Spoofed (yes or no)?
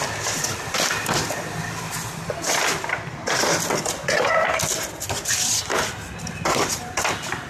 no